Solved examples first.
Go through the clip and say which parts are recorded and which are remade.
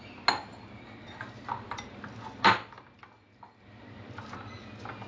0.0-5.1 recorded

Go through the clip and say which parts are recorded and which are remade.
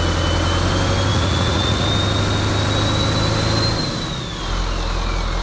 0.0-1.1 recorded; 1.1-1.9 remade; 1.9-5.4 recorded